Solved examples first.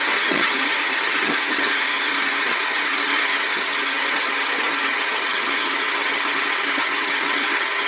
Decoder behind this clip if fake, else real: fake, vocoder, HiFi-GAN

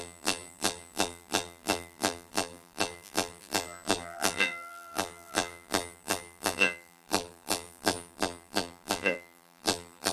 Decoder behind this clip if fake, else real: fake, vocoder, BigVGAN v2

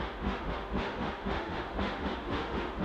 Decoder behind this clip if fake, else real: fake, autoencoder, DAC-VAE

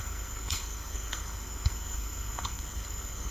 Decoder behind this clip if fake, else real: fake, codec, SNAC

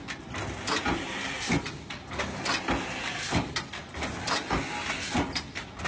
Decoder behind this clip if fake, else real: real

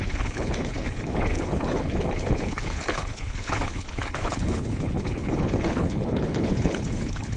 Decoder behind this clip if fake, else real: fake, codec, HILCodec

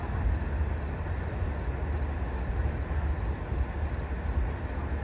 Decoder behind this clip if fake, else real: real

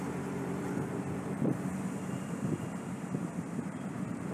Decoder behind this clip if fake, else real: fake, vocoder, BigVGAN v2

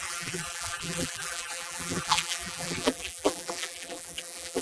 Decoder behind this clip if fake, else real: fake, vocoder, BigVGAN v2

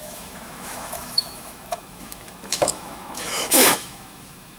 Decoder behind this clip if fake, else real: fake, autoencoder, DAC-VAE